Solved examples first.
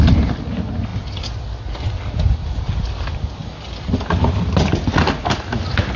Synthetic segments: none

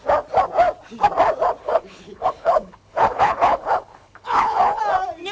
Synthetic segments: 1.6-4.8 (codec, HILCodec)